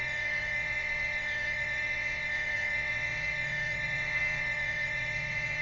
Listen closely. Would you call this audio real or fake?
fake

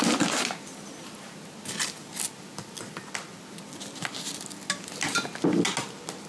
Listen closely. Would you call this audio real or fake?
real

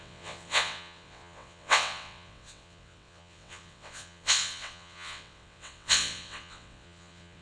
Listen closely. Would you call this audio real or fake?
fake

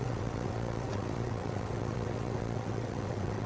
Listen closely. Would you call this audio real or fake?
fake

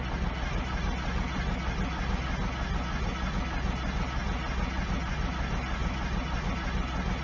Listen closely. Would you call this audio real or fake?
real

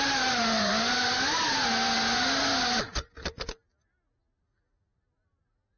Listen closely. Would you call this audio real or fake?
real